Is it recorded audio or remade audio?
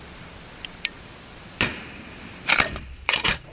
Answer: remade